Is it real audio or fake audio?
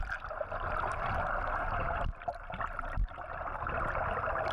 real